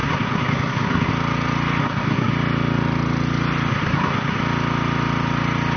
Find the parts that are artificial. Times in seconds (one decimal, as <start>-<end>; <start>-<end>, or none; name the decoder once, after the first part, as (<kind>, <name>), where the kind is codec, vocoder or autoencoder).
0.0-1.1 (codec, SNAC); 1.8-2.3; 3.7-4.4